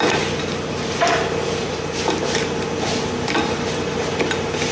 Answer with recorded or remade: recorded